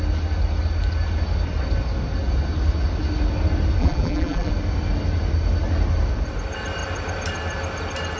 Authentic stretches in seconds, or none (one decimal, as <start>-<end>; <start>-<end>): 0.0-3.8; 4.5-8.2